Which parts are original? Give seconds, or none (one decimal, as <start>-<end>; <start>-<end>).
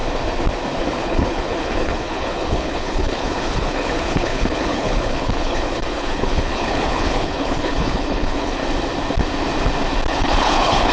0.0-0.8; 8.6-10.1